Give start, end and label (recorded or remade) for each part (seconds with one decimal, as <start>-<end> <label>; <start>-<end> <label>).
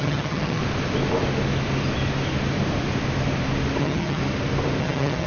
0.0-0.6 remade; 0.6-3.8 recorded; 3.8-4.2 remade; 4.2-4.8 recorded; 4.8-5.3 remade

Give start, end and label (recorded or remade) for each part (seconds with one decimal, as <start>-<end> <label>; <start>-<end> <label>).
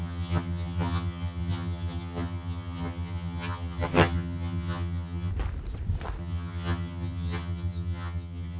0.0-5.3 remade; 5.3-6.2 recorded; 6.2-8.6 remade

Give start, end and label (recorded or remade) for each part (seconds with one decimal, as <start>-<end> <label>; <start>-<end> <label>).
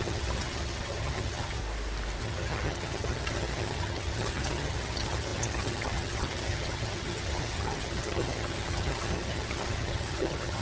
0.0-1.6 remade; 1.6-2.2 recorded; 2.2-10.6 remade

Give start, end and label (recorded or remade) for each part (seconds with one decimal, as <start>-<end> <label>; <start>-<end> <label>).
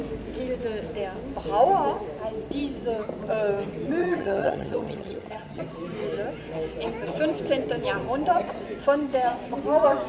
0.0-4.0 recorded; 4.0-5.6 remade; 5.6-10.1 recorded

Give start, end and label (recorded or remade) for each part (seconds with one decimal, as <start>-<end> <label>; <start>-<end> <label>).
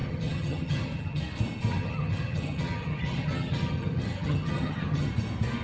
0.0-1.2 remade; 1.2-1.7 recorded; 1.7-5.1 remade; 5.1-5.6 recorded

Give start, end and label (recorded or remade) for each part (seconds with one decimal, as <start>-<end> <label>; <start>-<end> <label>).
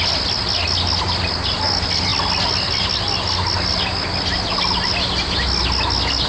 0.0-6.3 recorded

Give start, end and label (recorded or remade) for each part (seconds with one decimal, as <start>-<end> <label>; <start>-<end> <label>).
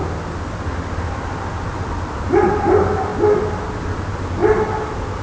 0.0-5.2 recorded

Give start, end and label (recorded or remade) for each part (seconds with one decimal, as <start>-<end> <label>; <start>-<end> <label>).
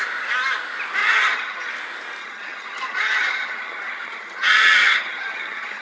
0.0-1.0 recorded; 1.0-1.7 remade; 1.7-2.2 recorded; 2.2-5.8 remade